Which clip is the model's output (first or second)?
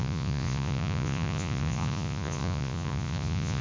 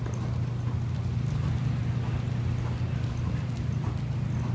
first